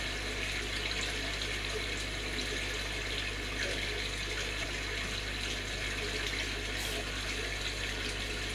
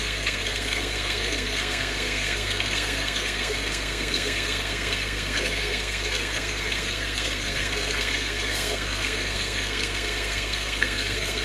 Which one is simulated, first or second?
second